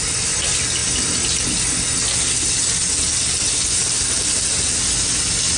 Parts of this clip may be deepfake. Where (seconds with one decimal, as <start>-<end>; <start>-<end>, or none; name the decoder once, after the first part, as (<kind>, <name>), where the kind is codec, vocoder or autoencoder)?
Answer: none